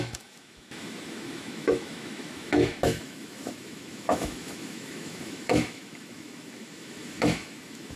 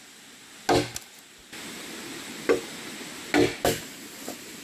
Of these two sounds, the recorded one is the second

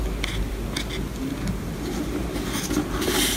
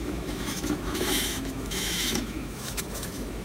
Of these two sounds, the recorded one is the first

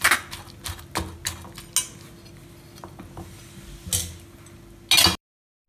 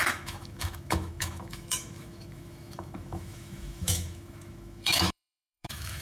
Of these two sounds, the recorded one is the first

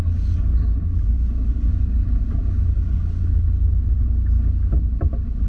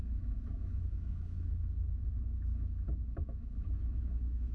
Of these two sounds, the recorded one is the first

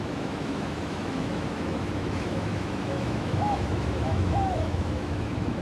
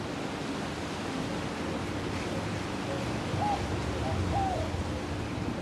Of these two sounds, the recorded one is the second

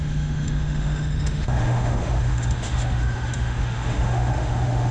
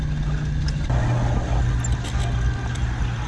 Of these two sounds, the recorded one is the second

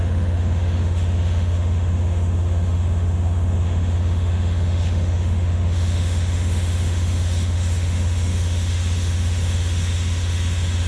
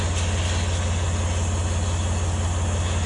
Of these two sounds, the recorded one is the second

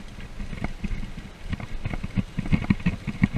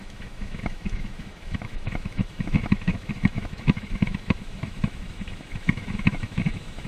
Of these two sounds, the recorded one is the first